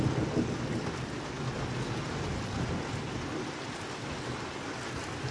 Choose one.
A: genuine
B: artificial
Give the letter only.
A